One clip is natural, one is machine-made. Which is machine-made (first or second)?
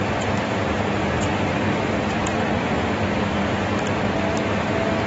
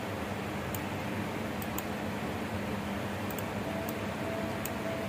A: first